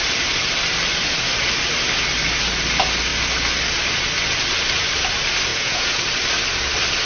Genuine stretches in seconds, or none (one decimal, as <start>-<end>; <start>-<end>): 0.0-5.5; 6.0-7.1